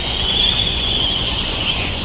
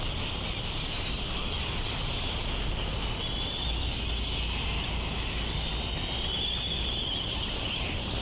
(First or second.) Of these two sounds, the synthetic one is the first